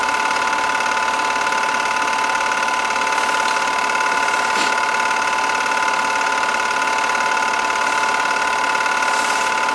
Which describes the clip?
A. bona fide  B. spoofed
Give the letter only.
B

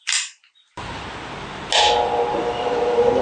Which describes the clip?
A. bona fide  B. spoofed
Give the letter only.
A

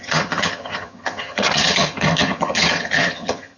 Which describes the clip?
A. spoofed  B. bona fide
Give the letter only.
A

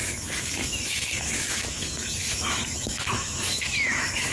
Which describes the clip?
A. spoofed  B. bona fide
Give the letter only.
A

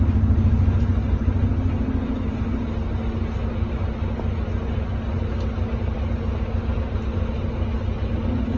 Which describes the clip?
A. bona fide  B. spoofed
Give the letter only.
A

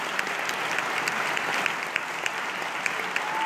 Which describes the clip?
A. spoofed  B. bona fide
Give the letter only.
B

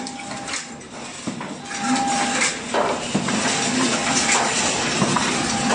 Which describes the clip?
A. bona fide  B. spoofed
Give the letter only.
A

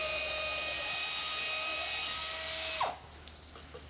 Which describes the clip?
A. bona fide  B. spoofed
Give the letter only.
A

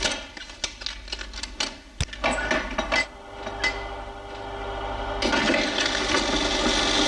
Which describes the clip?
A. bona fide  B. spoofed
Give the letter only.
A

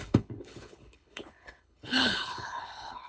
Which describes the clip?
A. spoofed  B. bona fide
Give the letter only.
A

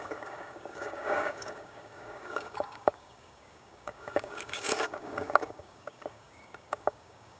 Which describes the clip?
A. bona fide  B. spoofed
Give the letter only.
B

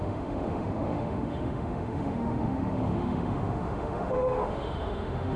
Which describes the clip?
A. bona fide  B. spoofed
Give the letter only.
B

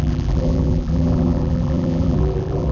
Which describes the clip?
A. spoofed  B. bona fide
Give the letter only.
A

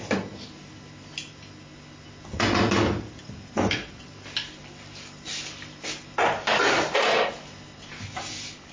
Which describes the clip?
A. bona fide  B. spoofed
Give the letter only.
A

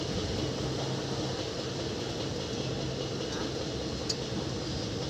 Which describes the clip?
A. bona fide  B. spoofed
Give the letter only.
A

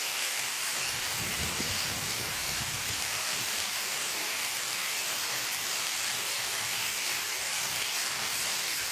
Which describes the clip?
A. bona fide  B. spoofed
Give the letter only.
B